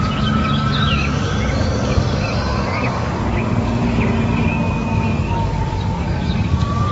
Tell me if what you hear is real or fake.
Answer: fake